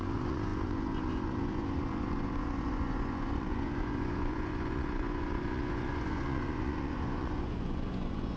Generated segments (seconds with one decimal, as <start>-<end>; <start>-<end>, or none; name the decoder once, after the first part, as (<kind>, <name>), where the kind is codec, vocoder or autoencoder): 0.0-8.4 (vocoder, Vocos)